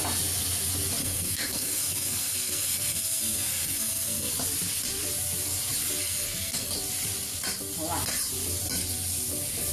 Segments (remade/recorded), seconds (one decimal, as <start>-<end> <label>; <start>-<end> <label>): 0.0-1.0 recorded; 1.0-4.3 remade; 4.3-6.0 recorded; 6.0-6.7 remade; 6.7-9.7 recorded